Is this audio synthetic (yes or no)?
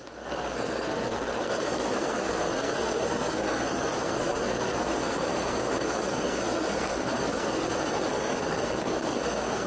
yes